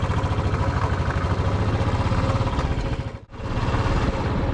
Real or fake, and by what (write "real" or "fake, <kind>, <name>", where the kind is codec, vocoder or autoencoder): real